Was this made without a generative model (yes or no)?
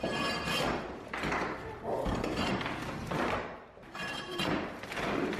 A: no